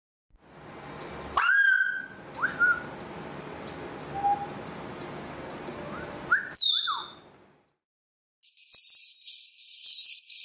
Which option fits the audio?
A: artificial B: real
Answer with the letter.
B